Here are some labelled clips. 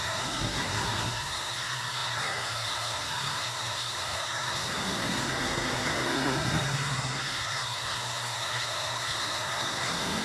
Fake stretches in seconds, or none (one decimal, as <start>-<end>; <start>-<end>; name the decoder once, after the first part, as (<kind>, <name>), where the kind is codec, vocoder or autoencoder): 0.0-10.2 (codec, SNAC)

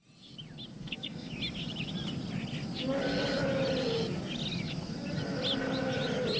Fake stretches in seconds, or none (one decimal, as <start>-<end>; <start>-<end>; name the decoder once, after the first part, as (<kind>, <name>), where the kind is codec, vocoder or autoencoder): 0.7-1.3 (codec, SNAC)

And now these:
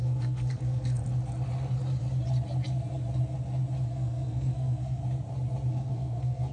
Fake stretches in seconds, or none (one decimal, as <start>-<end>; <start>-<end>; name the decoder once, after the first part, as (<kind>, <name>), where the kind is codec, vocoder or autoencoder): 0.0-1.0 (codec, SNAC); 3.9-5.0; 5.7-6.5

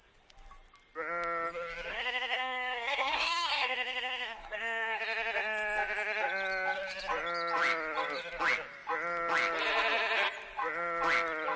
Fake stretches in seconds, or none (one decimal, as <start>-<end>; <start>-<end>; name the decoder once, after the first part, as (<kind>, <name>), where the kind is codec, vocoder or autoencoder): 1.9-5.0 (codec, SNAC)

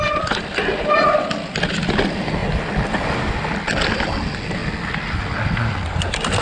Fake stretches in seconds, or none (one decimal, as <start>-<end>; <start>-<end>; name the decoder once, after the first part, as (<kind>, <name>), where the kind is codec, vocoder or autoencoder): none